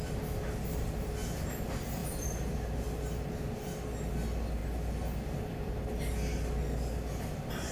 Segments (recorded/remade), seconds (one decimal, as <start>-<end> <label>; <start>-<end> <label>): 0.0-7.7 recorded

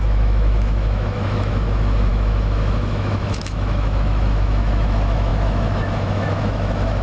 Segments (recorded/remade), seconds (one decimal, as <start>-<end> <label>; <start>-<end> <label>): 0.0-7.0 remade

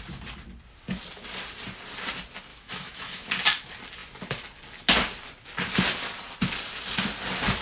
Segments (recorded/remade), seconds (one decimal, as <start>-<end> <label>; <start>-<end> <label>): 0.0-2.5 recorded; 2.5-3.3 remade; 3.3-7.6 recorded